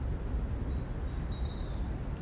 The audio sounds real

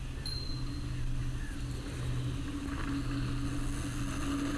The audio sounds real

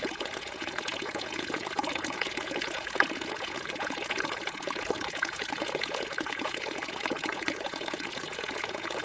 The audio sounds fake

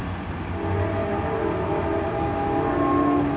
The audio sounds real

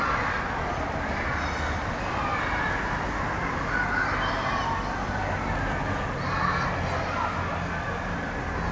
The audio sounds real